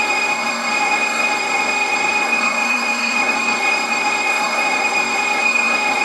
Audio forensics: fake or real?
fake